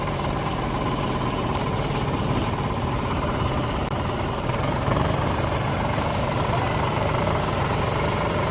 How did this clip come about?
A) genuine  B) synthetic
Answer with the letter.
B